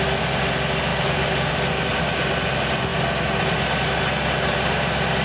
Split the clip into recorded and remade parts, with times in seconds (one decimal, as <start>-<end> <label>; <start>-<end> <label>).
0.0-0.9 recorded; 0.9-1.5 remade; 1.5-5.2 recorded